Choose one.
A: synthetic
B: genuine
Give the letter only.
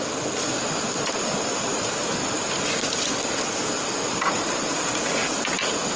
B